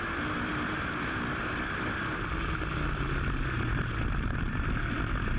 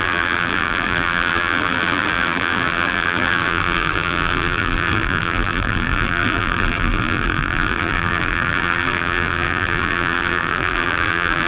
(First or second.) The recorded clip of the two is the first